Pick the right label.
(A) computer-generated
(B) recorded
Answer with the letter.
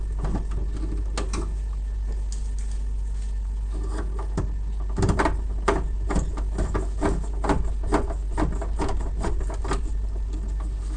B